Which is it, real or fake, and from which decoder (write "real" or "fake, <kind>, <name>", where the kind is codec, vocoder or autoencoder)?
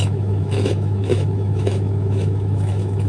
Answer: fake, autoencoder, DAC-VAE